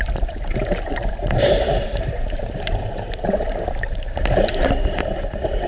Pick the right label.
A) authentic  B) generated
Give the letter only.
B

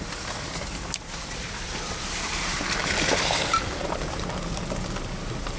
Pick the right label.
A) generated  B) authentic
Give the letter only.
B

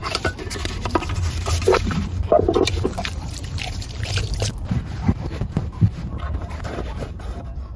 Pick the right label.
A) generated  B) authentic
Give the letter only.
A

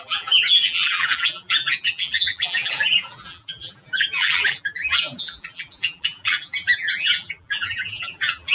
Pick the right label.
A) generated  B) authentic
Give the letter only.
A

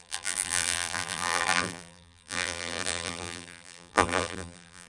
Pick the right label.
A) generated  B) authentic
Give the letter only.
A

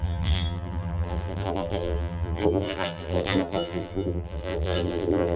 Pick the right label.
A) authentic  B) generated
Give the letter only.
B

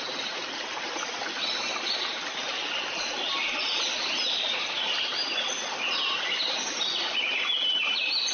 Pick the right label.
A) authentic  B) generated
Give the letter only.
A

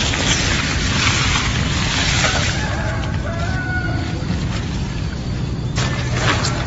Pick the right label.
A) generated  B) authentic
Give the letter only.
B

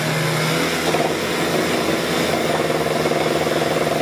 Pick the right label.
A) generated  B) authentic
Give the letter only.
B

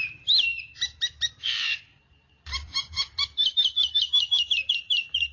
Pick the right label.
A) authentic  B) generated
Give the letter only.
B